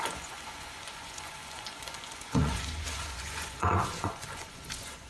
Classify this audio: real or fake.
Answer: fake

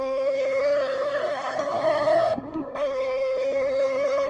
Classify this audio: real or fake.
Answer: fake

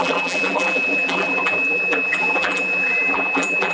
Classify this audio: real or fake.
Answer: fake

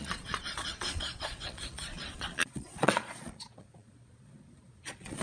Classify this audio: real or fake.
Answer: fake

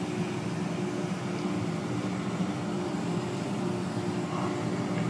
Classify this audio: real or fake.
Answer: real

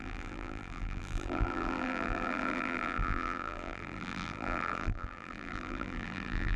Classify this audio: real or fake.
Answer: fake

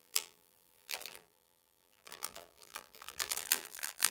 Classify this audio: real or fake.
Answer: fake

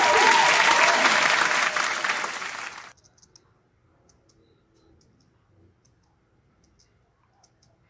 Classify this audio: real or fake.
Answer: real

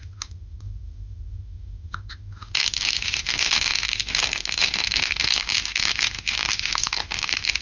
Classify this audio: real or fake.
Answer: fake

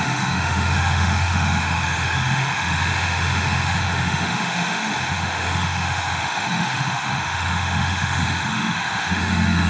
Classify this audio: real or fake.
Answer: fake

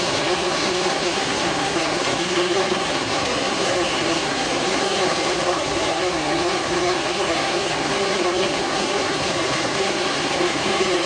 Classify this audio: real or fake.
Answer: fake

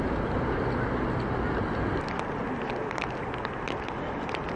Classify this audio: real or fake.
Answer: real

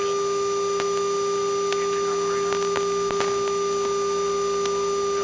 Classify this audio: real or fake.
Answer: real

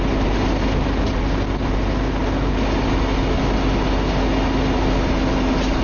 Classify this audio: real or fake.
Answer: real